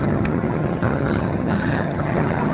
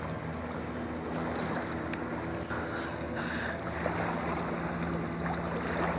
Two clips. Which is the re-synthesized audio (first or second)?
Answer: first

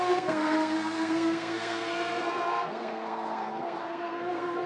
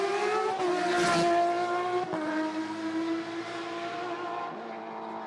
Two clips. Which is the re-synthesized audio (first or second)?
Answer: first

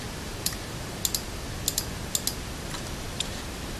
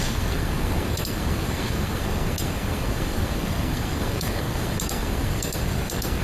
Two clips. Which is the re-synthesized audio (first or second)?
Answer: second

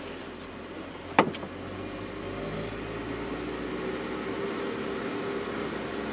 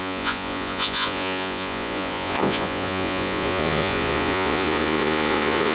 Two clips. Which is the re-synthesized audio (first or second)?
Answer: second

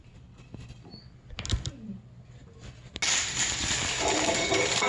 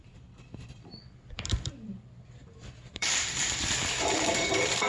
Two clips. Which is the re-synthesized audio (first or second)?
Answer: second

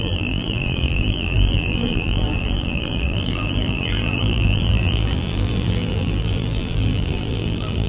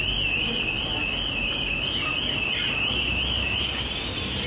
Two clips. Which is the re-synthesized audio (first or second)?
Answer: first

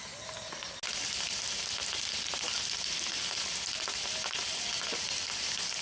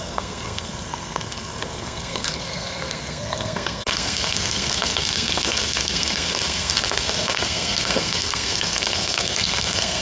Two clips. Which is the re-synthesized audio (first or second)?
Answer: second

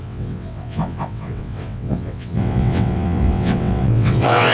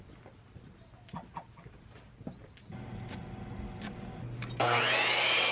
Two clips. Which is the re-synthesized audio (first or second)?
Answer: first